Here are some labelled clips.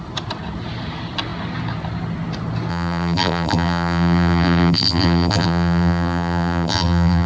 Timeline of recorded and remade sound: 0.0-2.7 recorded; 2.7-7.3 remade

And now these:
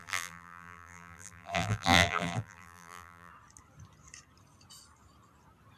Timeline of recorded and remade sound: 0.0-3.3 remade; 3.3-5.8 recorded

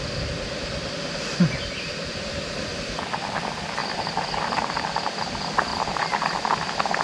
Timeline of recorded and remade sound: 0.0-2.7 recorded; 2.7-3.3 remade; 3.3-3.8 recorded; 3.8-4.8 remade; 4.8-5.7 recorded; 5.7-6.4 remade; 6.4-7.0 recorded

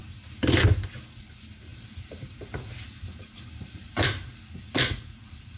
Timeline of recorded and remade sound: 0.0-1.2 recorded; 1.2-5.6 remade

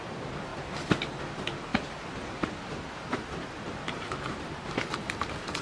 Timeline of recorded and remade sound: 0.0-1.7 recorded; 1.7-5.1 remade; 5.1-5.6 recorded

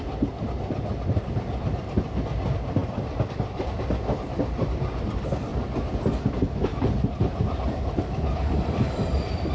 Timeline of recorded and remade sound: 0.0-5.5 remade; 5.5-6.8 recorded; 6.8-9.5 remade